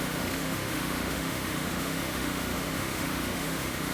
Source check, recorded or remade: remade